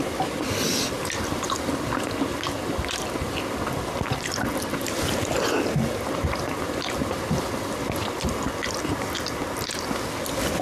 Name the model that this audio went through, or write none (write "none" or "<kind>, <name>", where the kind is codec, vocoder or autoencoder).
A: none